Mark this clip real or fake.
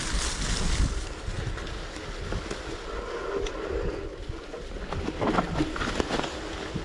real